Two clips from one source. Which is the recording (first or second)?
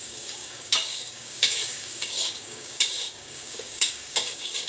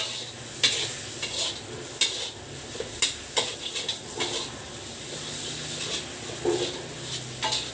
second